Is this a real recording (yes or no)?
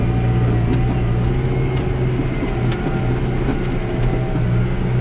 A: yes